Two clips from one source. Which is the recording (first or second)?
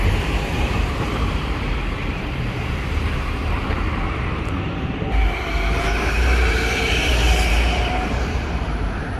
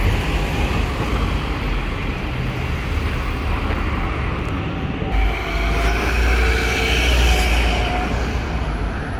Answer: second